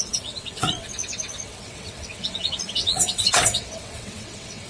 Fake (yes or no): yes